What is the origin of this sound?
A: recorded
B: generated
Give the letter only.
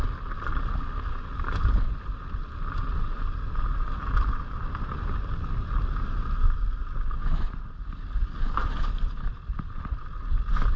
A